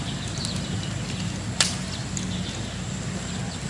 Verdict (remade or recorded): recorded